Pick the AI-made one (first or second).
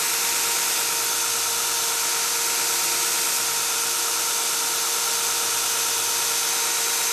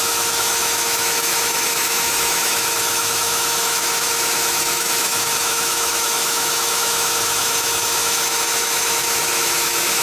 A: second